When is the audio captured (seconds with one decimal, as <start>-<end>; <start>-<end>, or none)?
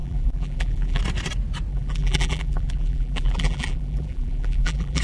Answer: 1.0-1.7